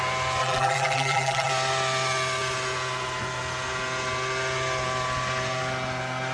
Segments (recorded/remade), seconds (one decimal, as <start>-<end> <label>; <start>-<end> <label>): 0.0-0.4 recorded; 0.4-1.5 remade; 1.5-6.3 recorded